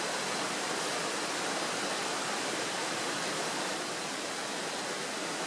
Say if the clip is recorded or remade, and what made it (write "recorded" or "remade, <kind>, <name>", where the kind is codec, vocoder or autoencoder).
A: recorded